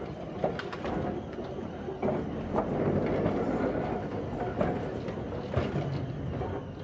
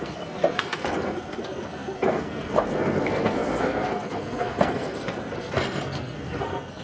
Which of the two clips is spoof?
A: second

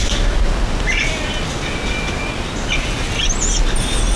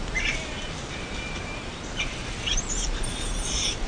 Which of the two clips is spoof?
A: second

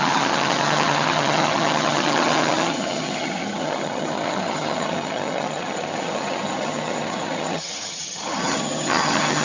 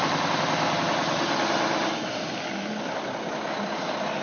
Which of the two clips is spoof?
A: first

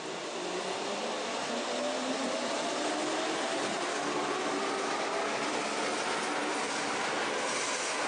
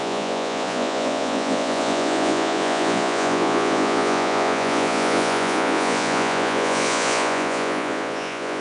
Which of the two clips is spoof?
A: second